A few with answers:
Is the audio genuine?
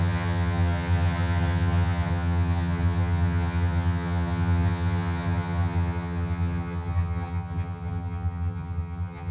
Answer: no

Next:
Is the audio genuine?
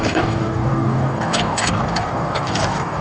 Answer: no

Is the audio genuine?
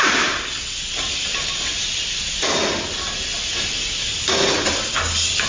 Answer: yes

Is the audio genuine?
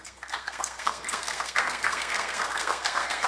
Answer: no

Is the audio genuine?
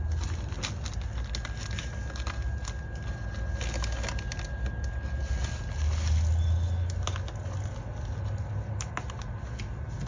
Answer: yes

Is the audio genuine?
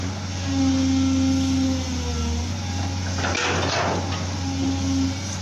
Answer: yes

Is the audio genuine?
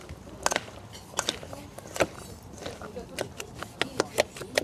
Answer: yes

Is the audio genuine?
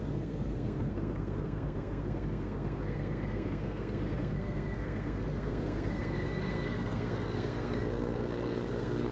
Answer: no